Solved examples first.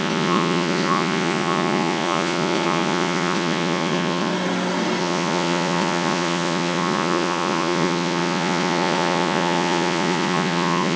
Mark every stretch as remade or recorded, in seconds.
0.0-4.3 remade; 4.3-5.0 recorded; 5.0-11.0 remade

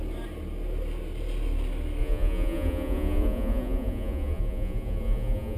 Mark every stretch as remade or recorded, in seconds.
0.0-2.0 recorded; 2.0-5.6 remade